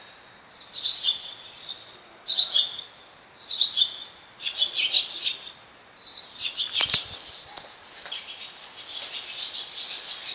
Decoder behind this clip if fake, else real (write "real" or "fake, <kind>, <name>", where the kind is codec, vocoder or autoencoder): real